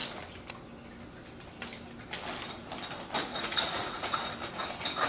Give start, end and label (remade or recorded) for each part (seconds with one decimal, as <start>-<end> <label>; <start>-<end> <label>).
0.0-3.2 recorded; 3.2-4.3 remade; 4.3-5.1 recorded